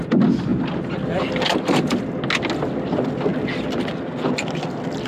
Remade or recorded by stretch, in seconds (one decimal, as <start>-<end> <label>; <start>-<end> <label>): 0.0-5.1 recorded